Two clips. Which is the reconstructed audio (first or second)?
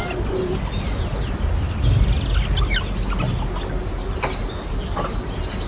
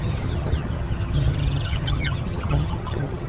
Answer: second